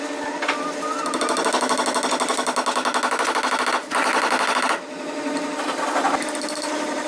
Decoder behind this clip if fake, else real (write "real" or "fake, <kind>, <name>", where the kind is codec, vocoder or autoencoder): real